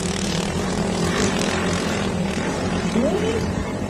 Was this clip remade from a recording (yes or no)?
yes